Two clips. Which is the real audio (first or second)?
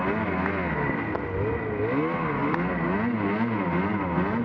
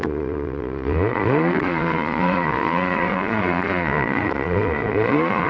first